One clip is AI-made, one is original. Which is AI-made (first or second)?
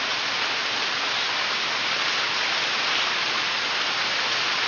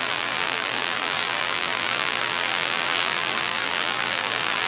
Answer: second